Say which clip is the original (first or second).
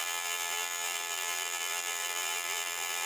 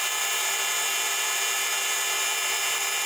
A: second